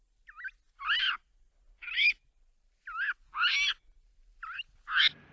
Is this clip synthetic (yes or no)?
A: no